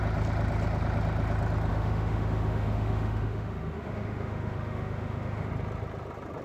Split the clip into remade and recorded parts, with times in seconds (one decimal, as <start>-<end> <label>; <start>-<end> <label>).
0.0-1.7 recorded; 1.7-5.5 remade; 5.5-6.4 recorded